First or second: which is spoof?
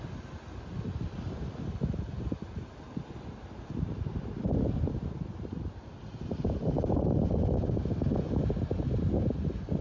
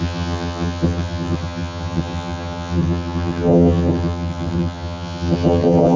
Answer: second